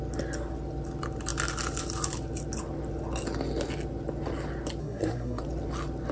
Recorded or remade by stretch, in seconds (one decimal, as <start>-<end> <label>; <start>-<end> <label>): 0.0-4.8 recorded; 4.8-5.4 remade; 5.4-6.1 recorded